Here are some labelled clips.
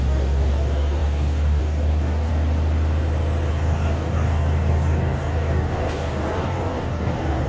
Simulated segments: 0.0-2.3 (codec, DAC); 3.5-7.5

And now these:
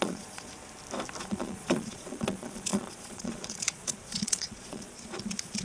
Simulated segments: 0.0-0.5 (vocoder, Vocos); 1.2-5.6

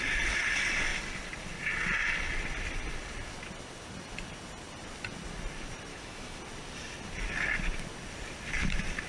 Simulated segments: 5.9-6.4 (autoencoder, DAC-VAE)

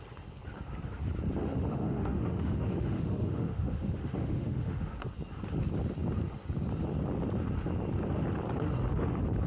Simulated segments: 1.4-4.9 (autoencoder, DAC-VAE)

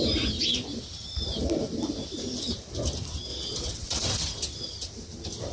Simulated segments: 3.3-3.9 (vocoder, WaveNeXt)

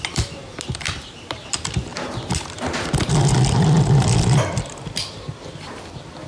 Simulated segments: 0.0-0.4 (vocoder, BigVGAN v2); 1.0-6.3